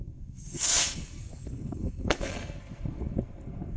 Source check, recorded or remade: remade